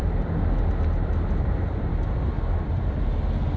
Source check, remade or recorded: recorded